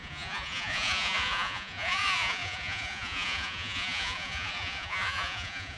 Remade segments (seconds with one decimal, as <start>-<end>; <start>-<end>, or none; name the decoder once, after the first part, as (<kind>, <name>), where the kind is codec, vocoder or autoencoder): 0.0-5.8 (vocoder, Vocos)